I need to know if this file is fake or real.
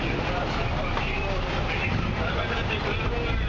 real